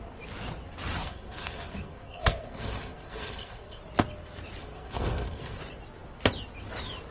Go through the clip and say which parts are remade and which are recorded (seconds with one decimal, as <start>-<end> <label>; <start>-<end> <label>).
0.0-1.0 recorded; 1.0-3.8 remade; 3.8-4.6 recorded; 4.6-5.6 remade; 5.6-7.1 recorded